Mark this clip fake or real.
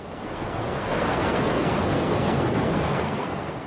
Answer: fake